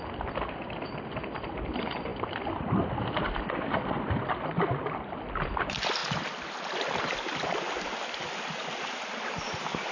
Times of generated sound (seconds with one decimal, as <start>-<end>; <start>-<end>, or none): none